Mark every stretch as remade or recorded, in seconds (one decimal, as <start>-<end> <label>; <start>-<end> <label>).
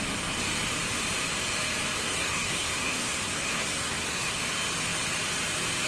0.0-2.0 recorded; 2.0-4.4 remade; 4.4-5.9 recorded